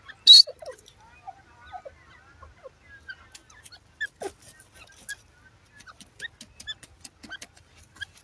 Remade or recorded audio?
recorded